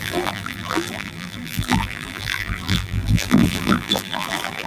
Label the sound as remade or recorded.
remade